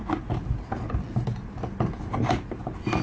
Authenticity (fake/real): real